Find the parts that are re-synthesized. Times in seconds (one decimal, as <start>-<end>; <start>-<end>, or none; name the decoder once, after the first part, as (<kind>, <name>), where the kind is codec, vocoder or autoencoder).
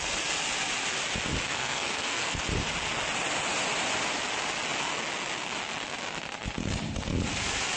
1.5-2.4 (codec, SNAC)